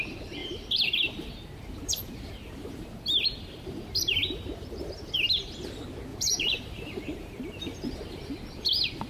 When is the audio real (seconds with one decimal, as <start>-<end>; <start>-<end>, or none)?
0.0-0.4; 5.1-6.1; 7.9-9.1